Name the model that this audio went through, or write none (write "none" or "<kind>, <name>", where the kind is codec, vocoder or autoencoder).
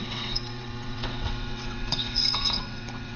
vocoder, WaveNeXt